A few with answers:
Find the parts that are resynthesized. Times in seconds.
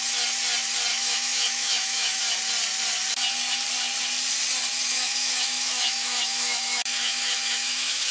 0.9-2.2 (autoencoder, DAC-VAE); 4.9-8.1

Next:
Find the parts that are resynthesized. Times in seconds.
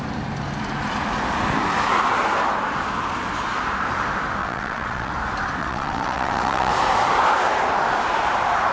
4.4-5.1 (vocoder, WaveNeXt); 5.6-6.7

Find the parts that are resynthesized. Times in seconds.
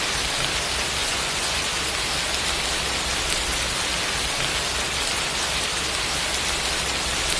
1.0-1.7 (vocoder, Vocos)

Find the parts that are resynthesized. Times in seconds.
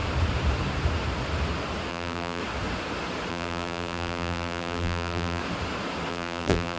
1.9-2.4 (vocoder, BigVGAN v2); 3.3-5.4; 6.1-6.8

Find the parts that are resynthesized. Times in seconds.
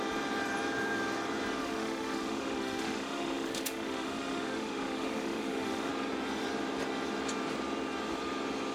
1.6-5.9 (autoencoder, DAC-VAE)